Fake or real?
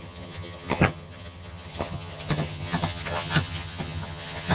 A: fake